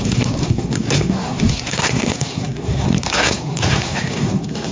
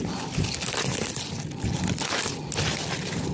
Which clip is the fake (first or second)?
first